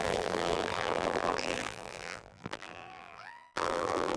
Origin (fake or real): fake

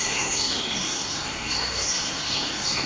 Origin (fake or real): fake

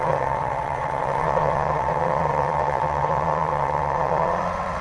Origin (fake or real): fake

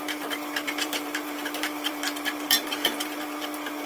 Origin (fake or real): fake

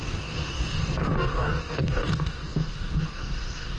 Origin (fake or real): fake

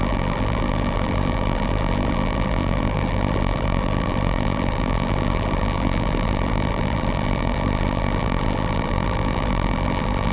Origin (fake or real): fake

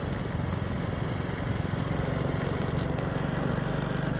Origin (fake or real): real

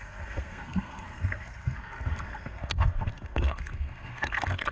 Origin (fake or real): fake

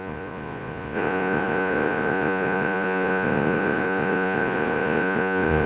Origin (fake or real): fake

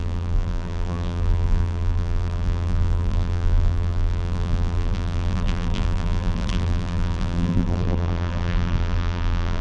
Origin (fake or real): fake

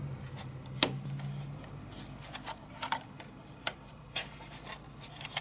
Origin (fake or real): real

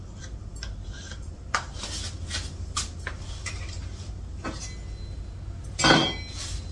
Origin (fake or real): real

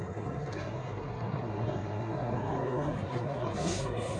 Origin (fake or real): fake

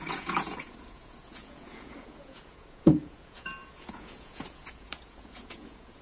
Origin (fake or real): fake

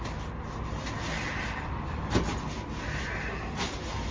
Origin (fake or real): real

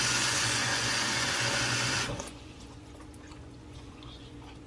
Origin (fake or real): fake